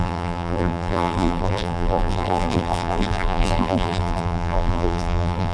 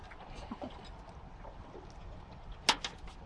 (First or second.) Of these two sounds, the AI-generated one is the first